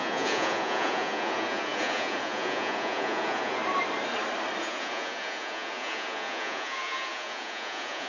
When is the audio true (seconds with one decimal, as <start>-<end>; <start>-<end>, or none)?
3.6-4.6

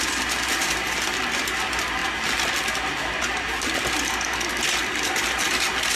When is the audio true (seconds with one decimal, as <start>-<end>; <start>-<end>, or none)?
0.0-6.0

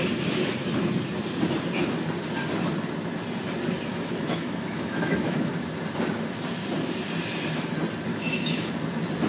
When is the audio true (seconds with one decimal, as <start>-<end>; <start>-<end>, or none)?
0.0-3.9; 5.5-8.1; 8.7-9.3

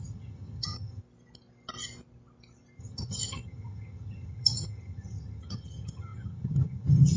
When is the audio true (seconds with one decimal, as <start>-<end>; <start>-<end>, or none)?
1.0-2.8

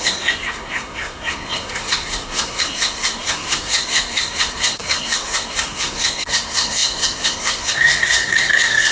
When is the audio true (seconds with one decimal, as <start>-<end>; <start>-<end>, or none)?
none